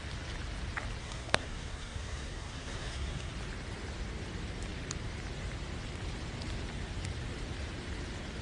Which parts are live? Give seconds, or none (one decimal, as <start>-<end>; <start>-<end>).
0.0-1.0; 3.3-8.4